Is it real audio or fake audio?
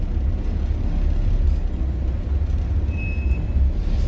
real